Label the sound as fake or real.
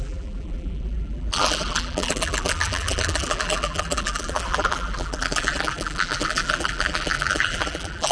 fake